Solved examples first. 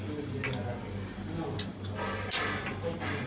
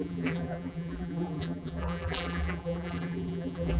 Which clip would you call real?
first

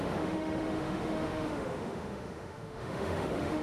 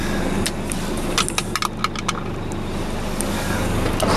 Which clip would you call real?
second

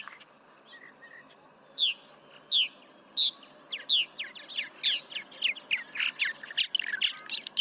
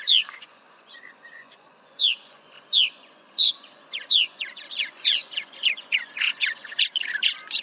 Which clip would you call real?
first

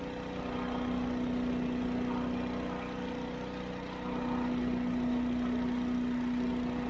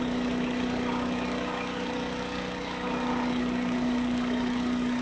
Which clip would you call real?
first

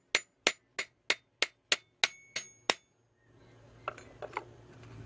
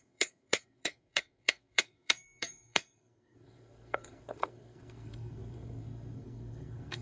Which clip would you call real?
first